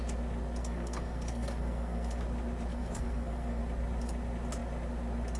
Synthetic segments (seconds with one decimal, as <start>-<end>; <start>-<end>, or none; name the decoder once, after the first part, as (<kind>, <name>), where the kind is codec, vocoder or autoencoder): 0.6-2.2 (codec, SNAC); 2.7-3.6

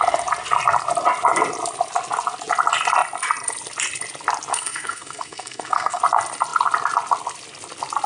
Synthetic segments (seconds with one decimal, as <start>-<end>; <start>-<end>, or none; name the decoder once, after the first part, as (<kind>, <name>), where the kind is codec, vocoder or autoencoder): 4.5-6.0 (codec, SNAC)

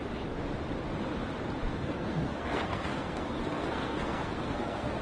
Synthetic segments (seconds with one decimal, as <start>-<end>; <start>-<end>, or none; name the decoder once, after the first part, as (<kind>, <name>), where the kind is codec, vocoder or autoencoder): 1.7-5.0 (codec, SNAC)

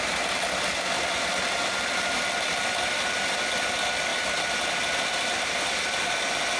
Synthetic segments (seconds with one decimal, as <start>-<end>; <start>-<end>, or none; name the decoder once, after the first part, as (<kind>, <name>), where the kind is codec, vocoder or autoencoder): none

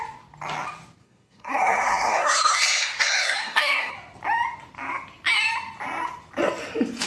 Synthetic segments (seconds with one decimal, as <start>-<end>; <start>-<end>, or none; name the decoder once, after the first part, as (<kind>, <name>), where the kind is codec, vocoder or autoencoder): 1.0-3.9 (codec, SNAC)

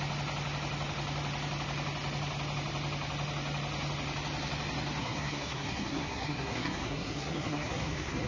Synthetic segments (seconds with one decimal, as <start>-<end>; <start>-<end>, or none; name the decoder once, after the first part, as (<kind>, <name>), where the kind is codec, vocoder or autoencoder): 5.0-8.3 (codec, SNAC)